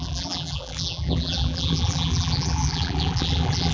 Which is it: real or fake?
fake